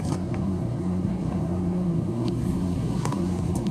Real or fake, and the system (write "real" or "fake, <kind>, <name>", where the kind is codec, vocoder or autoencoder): fake, codec, SNAC